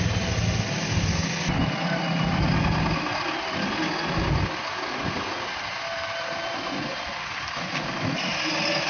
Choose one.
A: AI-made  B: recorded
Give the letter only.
B